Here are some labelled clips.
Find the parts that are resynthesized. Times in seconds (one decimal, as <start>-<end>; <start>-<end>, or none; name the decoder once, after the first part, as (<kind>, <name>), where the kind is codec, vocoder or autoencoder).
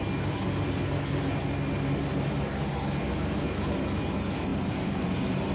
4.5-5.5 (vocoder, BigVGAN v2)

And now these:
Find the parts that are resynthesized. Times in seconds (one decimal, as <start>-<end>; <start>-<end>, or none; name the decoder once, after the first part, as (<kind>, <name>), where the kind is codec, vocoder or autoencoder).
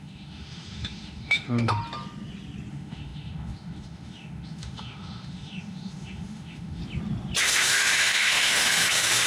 0.0-1.8 (autoencoder, DAC-VAE); 2.7-6.8; 7.4-9.3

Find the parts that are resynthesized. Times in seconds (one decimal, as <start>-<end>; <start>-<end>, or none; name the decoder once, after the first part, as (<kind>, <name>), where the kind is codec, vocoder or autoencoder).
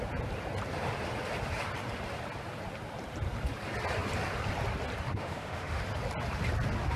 5.1-5.8 (autoencoder, DAC-VAE)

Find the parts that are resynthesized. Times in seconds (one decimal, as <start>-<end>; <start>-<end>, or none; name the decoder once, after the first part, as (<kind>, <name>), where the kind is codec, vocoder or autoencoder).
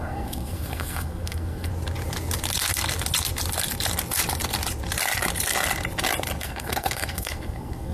0.0-1.7 (codec, SNAC); 6.4-7.9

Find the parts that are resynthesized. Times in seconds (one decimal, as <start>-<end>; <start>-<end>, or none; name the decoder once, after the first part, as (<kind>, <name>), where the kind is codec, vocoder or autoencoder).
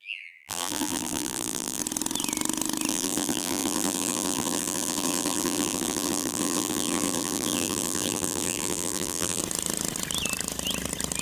0.0-1.8 (vocoder, BigVGAN v2); 2.9-9.4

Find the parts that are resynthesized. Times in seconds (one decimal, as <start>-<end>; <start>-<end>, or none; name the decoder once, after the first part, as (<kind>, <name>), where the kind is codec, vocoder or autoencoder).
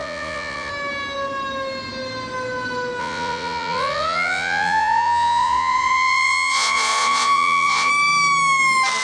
0.0-0.7 (vocoder, Vocos); 3.0-7.9